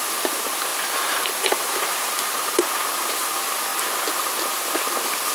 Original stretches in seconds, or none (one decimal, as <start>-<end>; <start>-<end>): 0.0-0.7; 2.6-5.3